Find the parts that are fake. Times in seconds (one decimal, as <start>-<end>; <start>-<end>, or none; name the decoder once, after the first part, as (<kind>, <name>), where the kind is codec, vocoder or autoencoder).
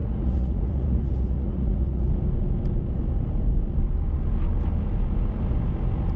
0.0-2.1 (vocoder, Vocos)